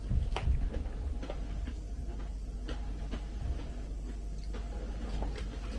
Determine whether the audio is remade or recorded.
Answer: recorded